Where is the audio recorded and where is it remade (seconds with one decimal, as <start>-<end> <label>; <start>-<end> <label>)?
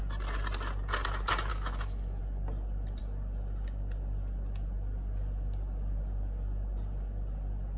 0.0-1.5 recorded; 1.5-2.2 remade; 2.2-7.8 recorded